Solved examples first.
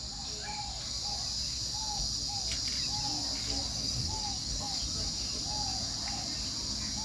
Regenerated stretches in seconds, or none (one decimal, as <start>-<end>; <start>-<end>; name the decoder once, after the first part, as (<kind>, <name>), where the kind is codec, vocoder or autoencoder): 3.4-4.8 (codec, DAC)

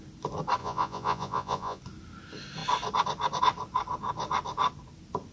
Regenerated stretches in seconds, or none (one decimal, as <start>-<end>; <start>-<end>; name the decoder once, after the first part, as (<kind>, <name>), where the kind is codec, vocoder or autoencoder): 0.6-1.8 (vocoder, Vocos)

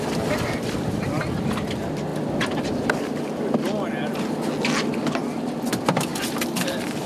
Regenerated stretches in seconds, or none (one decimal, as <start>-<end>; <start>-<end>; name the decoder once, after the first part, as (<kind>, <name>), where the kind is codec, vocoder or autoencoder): none

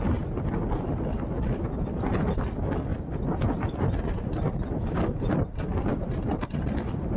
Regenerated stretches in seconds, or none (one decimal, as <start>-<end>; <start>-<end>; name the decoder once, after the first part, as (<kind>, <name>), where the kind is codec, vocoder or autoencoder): 5.9-6.5 (vocoder, BigVGAN v2)